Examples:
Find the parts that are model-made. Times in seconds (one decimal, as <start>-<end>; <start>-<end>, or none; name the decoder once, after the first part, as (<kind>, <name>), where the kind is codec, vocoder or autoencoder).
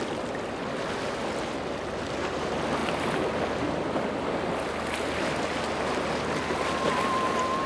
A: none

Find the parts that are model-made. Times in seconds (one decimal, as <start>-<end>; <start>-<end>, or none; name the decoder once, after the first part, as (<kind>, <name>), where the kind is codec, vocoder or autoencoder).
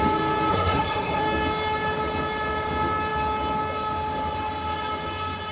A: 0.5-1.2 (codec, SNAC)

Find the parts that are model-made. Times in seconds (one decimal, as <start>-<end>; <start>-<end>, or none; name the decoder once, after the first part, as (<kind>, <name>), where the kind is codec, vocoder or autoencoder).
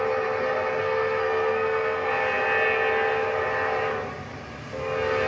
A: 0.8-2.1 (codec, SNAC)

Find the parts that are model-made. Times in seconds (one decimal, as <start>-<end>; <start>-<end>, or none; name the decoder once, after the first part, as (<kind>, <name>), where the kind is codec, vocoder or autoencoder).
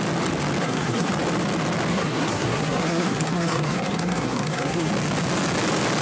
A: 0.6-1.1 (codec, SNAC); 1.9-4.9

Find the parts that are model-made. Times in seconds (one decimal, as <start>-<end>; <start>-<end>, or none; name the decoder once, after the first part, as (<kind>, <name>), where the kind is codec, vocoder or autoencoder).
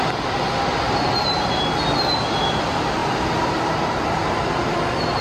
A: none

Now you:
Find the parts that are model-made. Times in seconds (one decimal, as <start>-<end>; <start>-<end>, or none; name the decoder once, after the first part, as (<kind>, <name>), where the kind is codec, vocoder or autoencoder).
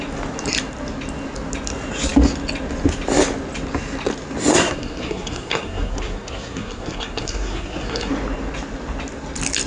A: 4.5-8.1 (codec, SNAC)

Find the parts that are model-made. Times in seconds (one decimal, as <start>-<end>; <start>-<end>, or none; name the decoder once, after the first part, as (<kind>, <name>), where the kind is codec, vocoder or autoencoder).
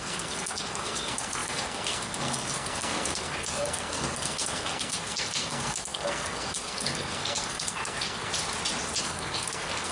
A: 0.0-8.3 (codec, SNAC); 9.0-9.9